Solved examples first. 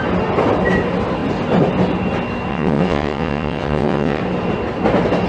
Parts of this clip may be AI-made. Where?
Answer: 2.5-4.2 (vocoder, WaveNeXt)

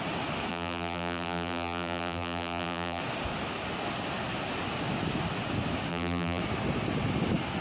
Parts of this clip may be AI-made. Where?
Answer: 0.5-3.0 (vocoder, BigVGAN v2); 5.9-6.4

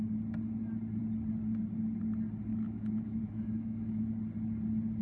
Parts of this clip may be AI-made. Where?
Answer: 2.5-4.1 (autoencoder, DAC-VAE)

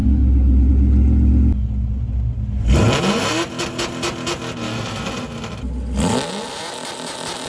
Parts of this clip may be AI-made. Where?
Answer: none

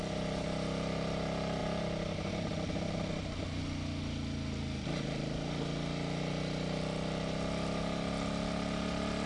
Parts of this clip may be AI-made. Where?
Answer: none

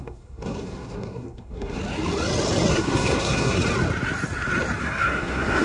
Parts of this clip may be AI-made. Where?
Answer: 0.0-1.8 (codec, SNAC); 2.7-3.6; 4.8-5.6